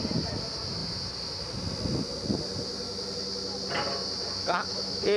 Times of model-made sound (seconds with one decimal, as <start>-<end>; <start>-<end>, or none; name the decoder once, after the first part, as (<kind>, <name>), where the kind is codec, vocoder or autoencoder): 4.4-5.2 (autoencoder, DAC-VAE)